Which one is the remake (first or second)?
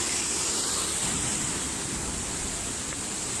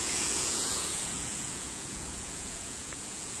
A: second